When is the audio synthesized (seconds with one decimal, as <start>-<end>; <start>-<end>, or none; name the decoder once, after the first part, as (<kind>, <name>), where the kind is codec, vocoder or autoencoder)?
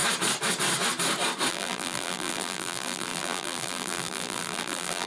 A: 1.5-5.1 (vocoder, BigVGAN v2)